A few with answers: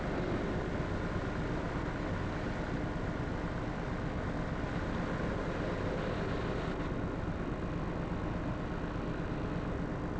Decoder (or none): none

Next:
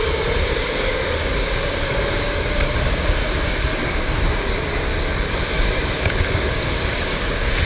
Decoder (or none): codec, DAC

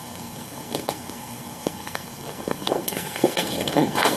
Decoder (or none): codec, SNAC